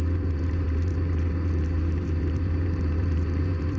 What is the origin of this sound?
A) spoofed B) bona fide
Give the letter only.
A